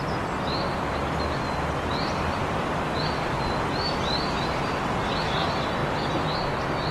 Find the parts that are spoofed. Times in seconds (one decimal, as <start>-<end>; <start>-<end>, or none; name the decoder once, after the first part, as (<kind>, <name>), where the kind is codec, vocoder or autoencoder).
none